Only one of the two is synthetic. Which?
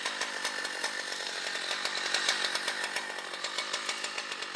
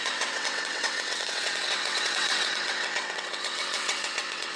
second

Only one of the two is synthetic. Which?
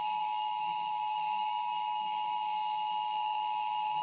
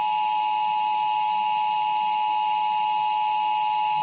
first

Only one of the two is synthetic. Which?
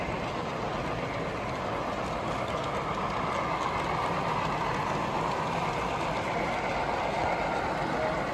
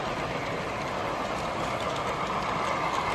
second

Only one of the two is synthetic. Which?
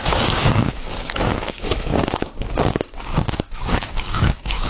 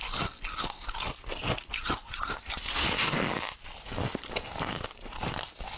first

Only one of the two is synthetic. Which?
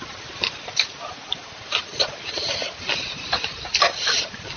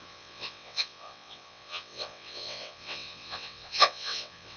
second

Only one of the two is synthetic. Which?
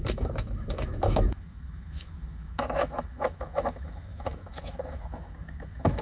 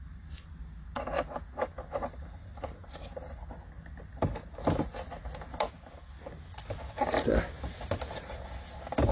first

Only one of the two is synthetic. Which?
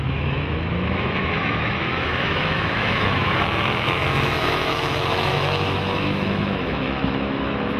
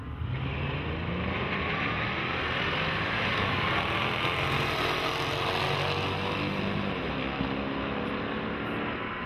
first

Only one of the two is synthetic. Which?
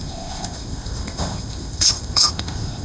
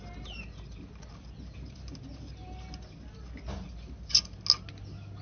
first